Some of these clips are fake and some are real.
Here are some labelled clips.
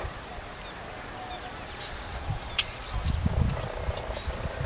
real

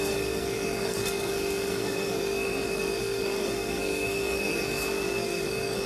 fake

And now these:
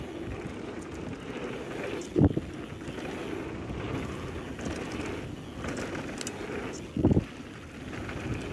real